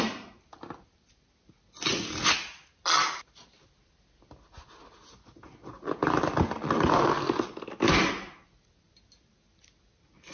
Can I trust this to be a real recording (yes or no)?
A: yes